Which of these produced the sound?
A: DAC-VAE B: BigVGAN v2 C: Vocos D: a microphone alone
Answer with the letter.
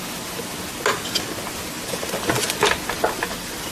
D